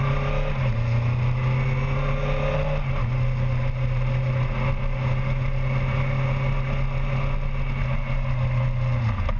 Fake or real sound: real